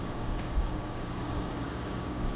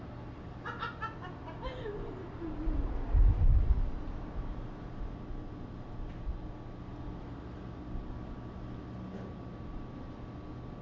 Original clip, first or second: second